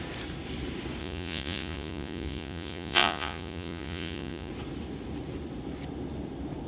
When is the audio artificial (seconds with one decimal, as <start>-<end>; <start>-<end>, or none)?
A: 1.0-4.5